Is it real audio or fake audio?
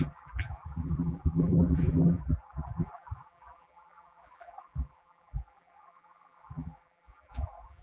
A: fake